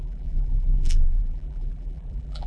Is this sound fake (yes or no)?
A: yes